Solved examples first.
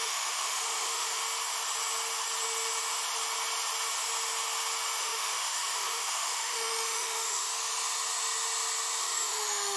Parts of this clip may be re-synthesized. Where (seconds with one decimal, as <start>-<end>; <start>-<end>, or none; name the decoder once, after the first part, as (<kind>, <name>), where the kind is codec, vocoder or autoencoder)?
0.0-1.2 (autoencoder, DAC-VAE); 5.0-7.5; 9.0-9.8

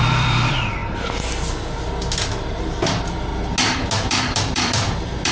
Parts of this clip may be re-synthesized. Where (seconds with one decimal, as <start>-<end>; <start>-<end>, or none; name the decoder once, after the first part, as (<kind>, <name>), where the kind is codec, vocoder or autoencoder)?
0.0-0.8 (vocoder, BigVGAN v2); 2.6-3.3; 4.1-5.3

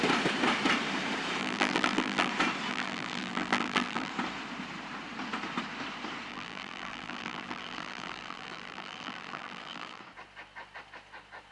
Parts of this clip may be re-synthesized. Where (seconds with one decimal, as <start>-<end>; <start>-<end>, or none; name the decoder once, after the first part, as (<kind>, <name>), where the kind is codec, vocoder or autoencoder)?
1.4-2.3 (vocoder, BigVGAN v2); 2.7-4.1; 6.3-10.0

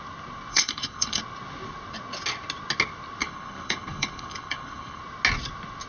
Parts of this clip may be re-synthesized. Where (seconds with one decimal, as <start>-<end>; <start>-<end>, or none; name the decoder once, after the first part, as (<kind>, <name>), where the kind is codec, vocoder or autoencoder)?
0.5-1.2 (codec, HILCodec); 3.2-5.0

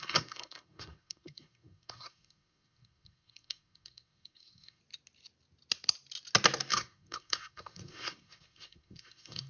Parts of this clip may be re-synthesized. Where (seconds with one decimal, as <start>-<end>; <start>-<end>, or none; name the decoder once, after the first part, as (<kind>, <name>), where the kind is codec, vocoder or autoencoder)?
0.0-4.8 (codec, SNAC); 6.7-9.5

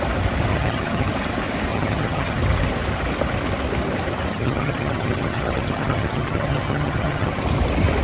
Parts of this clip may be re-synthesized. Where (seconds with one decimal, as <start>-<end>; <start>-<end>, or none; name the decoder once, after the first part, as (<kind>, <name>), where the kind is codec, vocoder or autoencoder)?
0.5-1.1 (vocoder, HiFi-GAN); 1.7-2.4; 4.3-7.4

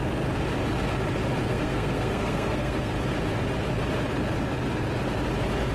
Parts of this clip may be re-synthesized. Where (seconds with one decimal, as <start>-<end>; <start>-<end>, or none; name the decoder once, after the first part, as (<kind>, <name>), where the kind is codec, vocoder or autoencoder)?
1.5-2.9 (codec, SNAC)

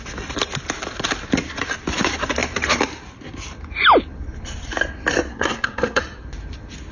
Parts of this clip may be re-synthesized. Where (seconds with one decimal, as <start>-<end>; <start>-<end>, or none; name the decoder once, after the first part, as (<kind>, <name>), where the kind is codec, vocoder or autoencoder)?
5.3-6.0 (codec, SNAC)